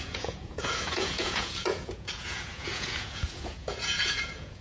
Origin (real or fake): fake